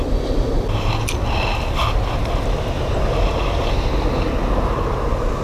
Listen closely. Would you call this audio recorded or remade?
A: recorded